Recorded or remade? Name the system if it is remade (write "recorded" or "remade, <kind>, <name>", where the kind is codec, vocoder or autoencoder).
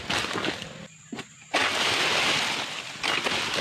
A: recorded